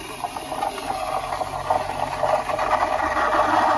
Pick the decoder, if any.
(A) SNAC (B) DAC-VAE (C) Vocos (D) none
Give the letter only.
D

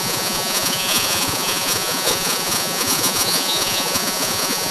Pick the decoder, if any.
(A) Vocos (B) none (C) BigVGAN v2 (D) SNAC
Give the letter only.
A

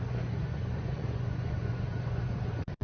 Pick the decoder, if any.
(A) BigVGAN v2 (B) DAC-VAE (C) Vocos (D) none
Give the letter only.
C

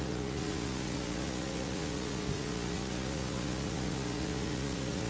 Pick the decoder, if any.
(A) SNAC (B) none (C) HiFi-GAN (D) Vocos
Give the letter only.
D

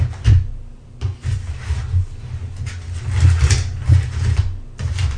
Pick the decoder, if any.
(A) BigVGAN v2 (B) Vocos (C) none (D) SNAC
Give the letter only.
C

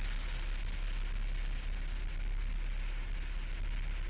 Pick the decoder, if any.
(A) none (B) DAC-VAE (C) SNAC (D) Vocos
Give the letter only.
A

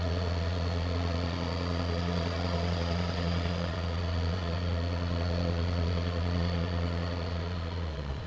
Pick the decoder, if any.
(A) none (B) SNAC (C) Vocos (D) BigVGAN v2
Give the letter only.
C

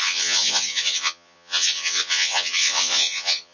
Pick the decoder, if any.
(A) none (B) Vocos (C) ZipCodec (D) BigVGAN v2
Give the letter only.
B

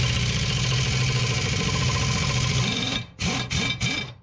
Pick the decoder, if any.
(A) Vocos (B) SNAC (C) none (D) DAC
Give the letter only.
C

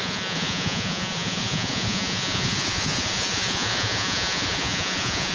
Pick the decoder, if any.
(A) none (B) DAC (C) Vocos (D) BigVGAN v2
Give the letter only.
C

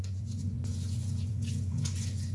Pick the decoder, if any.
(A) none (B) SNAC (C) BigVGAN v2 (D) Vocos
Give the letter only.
D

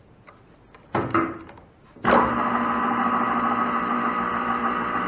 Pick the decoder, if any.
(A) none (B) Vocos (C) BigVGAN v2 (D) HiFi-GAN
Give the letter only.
A